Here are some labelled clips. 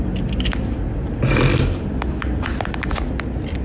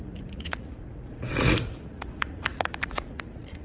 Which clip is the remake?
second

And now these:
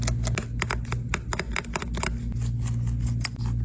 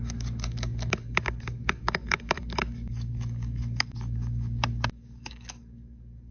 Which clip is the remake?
second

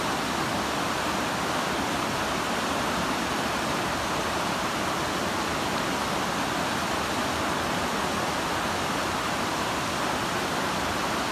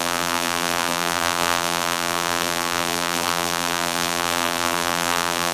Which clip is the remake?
second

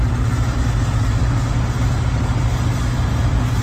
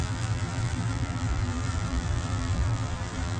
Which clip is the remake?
second